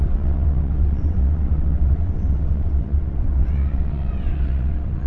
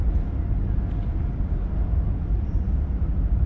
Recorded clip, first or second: second